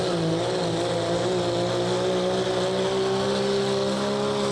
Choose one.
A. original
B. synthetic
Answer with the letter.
A